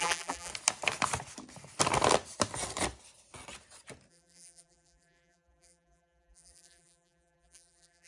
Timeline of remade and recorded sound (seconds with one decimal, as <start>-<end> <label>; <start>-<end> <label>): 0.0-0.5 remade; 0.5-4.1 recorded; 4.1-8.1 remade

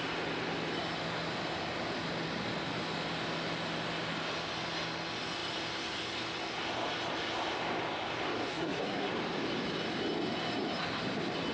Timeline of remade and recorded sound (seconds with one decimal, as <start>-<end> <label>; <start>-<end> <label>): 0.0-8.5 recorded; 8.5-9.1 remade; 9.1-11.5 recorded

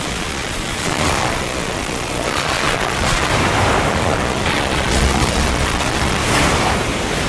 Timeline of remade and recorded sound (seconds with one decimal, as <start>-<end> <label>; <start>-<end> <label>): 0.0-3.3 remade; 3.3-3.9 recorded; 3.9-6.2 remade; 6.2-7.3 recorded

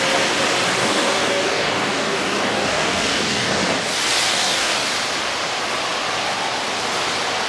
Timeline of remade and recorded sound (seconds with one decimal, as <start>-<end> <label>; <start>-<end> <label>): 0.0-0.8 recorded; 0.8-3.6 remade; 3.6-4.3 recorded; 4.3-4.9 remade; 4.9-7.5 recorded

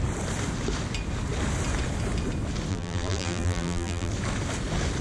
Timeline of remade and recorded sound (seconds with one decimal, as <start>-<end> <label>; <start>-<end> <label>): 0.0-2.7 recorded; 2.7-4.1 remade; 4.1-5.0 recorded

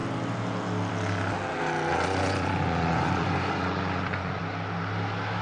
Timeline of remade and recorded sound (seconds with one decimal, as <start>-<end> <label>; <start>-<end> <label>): 0.0-1.9 recorded; 1.9-4.4 remade; 4.4-5.4 recorded